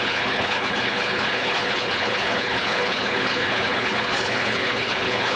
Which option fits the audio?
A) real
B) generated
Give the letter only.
B